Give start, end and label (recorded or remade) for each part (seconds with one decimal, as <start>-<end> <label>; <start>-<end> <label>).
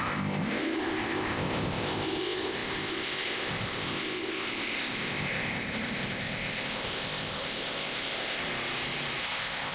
0.0-8.4 remade; 8.4-9.2 recorded; 9.2-9.7 remade